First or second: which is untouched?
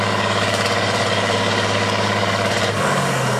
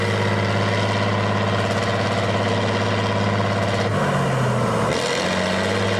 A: second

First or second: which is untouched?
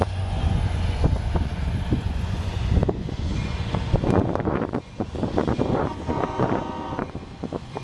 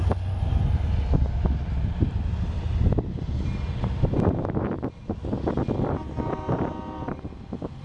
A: second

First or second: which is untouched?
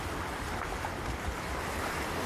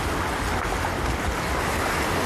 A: second